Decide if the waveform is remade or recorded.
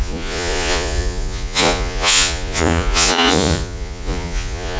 remade